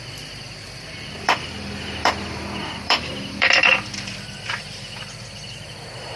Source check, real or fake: fake